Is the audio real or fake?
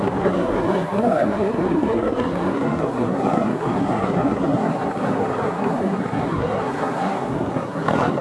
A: fake